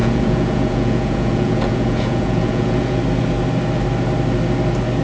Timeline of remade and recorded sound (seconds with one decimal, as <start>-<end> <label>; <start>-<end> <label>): 0.0-3.0 remade; 3.0-5.0 recorded